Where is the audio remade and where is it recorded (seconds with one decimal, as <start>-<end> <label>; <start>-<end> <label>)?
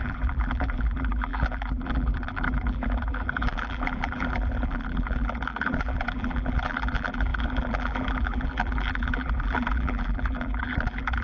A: 0.0-11.2 remade